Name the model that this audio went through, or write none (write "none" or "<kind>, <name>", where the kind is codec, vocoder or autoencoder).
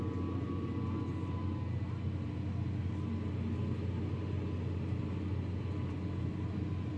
none